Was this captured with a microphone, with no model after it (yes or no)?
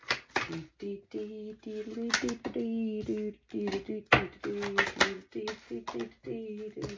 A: yes